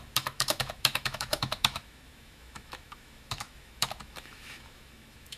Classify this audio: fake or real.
fake